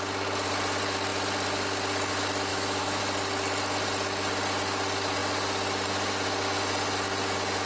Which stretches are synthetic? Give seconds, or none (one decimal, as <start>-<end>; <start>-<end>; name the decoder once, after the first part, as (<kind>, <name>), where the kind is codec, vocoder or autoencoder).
2.5-3.0 (autoencoder, DAC-VAE)